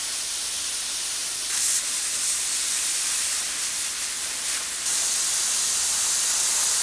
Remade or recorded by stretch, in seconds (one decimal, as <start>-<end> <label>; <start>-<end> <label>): 0.0-6.8 recorded